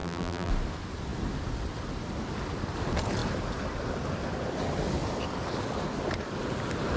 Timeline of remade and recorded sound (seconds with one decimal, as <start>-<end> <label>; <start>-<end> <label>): 0.0-0.5 remade; 0.5-7.0 recorded